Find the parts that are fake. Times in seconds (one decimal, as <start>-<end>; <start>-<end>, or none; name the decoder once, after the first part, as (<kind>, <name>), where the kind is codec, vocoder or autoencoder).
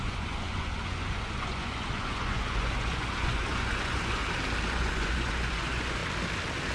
0.0-4.2 (vocoder, Vocos); 4.7-6.0